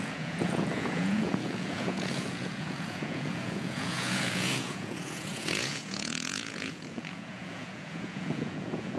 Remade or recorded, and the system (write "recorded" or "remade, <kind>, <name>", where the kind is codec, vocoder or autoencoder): remade, vocoder, Vocos